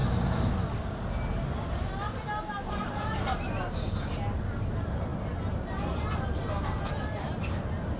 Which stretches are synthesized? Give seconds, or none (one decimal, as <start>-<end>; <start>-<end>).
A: none